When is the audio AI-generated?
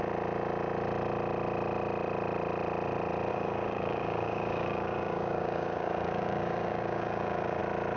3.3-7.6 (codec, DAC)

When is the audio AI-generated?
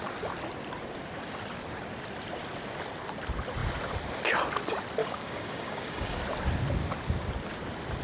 5.0-6.2 (codec, DAC)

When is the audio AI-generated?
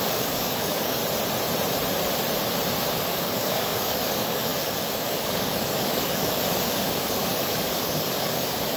0.0-1.0 (codec, DAC); 2.9-8.8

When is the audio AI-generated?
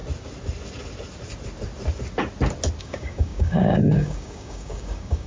2.8-5.3 (codec, DAC)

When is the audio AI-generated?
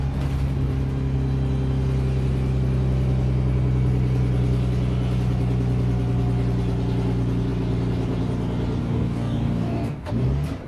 8.8-10.1 (codec, DAC)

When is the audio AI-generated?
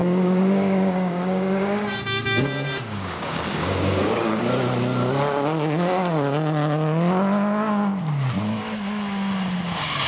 0.0-4.4 (codec, DAC)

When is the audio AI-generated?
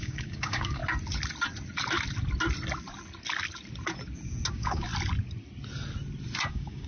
0.0-0.8 (codec, DAC); 4.5-4.9; 6.5-6.9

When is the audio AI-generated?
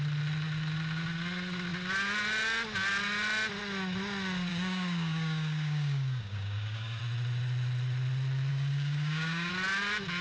4.5-7.0 (codec, DAC); 8.5-9.5